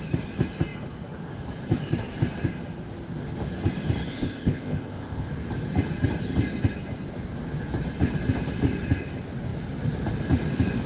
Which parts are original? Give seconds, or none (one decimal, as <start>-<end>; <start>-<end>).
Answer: 0.0-4.1; 5.3-10.9